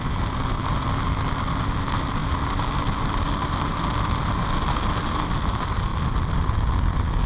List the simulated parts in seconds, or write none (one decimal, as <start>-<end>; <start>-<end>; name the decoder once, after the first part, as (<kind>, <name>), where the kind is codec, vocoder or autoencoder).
none